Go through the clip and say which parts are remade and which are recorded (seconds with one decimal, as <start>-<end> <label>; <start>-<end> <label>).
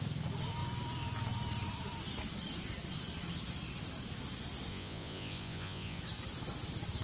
0.0-4.7 recorded; 4.7-6.0 remade; 6.0-7.0 recorded